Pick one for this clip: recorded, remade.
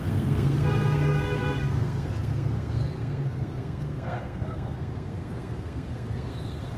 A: remade